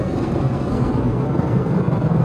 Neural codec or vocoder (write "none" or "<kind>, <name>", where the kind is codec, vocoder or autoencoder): codec, SNAC